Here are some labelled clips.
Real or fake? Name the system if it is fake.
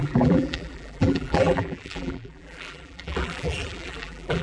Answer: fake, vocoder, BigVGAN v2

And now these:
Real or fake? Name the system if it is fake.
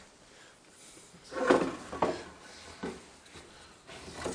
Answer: real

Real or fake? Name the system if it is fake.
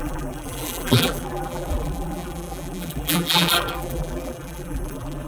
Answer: fake, vocoder, BigVGAN v2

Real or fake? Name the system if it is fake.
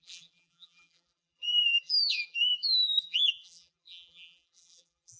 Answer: fake, vocoder, BigVGAN v2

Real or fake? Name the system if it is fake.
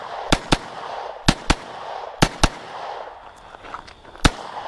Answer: real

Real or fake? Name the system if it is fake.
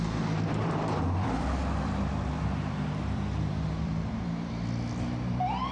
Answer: fake, vocoder, BigVGAN v2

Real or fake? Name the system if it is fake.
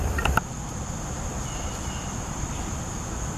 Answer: fake, vocoder, BigVGAN v2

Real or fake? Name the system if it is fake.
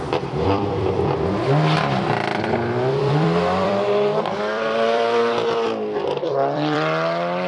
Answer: fake, vocoder, BigVGAN v2